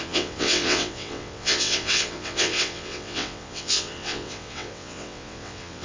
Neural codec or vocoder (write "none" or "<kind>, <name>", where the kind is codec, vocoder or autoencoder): vocoder, WaveNeXt